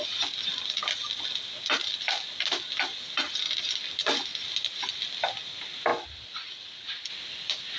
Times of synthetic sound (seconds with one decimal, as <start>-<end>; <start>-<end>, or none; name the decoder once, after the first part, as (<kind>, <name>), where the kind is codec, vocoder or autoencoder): none